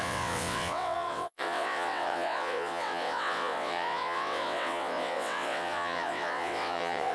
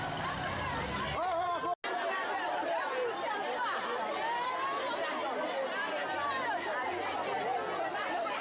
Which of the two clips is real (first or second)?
second